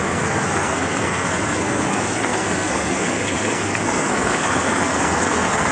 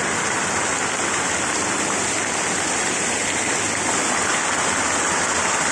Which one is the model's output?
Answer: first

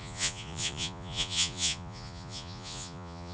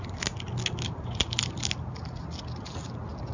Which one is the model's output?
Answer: first